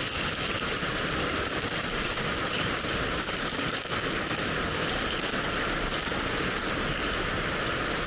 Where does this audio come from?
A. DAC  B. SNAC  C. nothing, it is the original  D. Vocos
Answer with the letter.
C